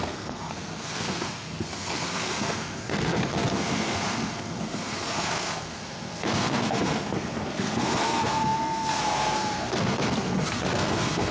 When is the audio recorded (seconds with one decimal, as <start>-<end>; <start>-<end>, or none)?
none